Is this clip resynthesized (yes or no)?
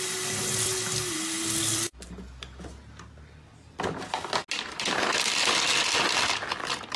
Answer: no